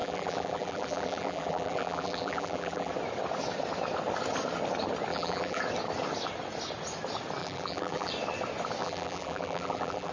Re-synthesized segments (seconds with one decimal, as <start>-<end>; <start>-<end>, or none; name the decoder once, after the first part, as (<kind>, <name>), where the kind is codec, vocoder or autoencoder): 0.0-2.9 (vocoder, BigVGAN v2); 5.1-5.6; 7.4-8.1; 8.8-10.1